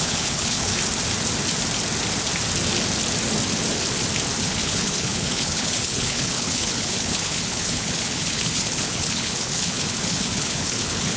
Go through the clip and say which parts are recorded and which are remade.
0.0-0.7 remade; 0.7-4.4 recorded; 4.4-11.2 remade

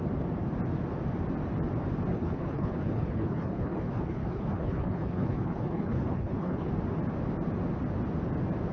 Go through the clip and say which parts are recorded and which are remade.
0.0-2.1 recorded; 2.1-6.7 remade; 6.7-8.7 recorded

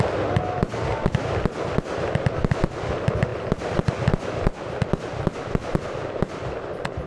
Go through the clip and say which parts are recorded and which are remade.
0.0-7.1 recorded

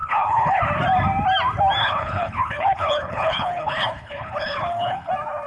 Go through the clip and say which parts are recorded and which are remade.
0.0-0.6 remade; 0.6-1.8 recorded; 1.8-5.1 remade; 5.1-5.5 recorded

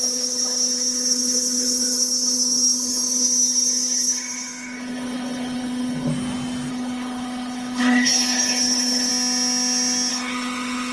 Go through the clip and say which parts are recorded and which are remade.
0.0-6.1 remade; 6.1-6.7 recorded; 6.7-9.1 remade; 9.1-10.1 recorded; 10.1-10.9 remade

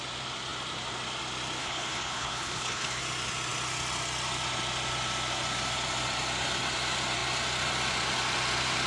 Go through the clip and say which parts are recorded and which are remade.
0.0-1.6 recorded; 1.6-3.0 remade; 3.0-8.9 recorded